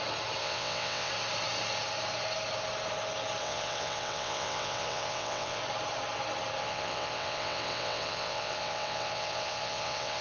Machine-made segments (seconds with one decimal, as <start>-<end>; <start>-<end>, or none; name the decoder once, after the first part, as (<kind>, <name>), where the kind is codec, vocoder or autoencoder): 0.4-1.1 (vocoder, WaveNeXt); 3.4-5.6; 6.6-10.2